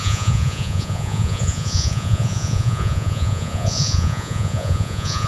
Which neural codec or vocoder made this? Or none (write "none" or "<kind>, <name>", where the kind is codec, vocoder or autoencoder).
vocoder, Vocos